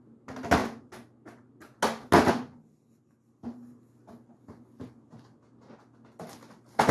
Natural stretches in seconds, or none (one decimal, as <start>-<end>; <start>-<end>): 0.0-6.9